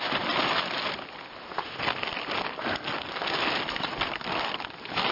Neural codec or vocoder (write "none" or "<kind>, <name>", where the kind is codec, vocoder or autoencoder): none